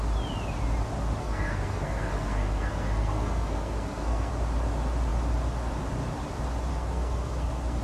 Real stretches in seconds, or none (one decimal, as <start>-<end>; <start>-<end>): 0.0-1.2; 4.3-6.7